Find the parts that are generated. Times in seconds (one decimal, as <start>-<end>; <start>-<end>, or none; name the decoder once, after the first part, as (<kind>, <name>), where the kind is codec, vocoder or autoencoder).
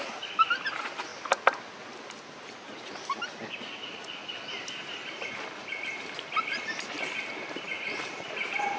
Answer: none